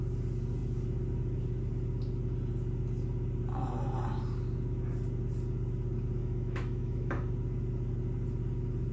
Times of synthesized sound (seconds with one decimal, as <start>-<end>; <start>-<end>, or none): 6.2-7.3